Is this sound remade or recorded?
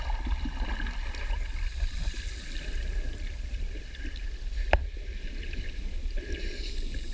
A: recorded